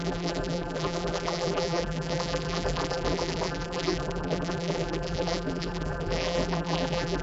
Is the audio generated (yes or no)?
yes